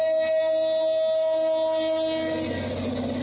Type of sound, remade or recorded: recorded